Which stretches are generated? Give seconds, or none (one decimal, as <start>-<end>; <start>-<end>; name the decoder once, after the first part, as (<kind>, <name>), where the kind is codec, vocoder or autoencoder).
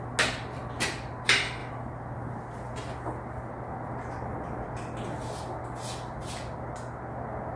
none